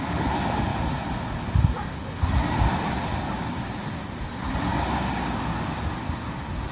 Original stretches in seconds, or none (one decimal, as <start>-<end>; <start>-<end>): 0.0-4.7; 5.4-6.7